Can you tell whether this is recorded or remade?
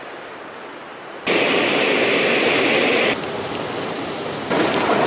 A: recorded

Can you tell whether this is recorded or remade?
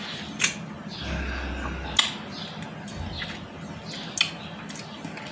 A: recorded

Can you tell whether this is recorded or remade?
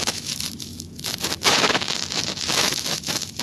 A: remade